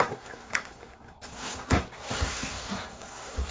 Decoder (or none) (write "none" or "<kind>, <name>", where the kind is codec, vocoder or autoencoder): codec, SNAC